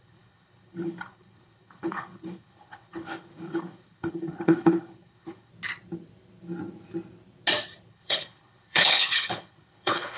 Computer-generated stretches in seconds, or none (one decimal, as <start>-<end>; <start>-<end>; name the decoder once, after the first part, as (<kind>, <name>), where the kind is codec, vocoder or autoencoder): 0.0-5.5 (codec, HILCodec); 7.9-10.2